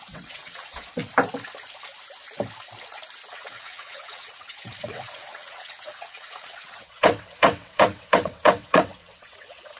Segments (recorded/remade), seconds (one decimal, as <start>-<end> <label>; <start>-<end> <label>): 0.0-1.0 remade; 1.0-3.3 recorded; 3.3-9.8 remade